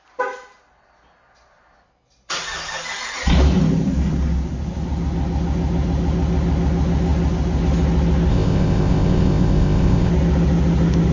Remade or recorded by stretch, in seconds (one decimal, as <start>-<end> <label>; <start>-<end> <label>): 0.0-8.3 recorded; 8.3-10.1 remade; 10.1-11.1 recorded